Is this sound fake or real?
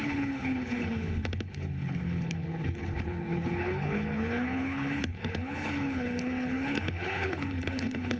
fake